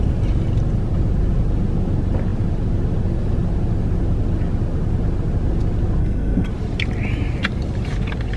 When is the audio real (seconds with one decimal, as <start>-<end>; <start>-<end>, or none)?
0.0-6.0; 6.5-8.4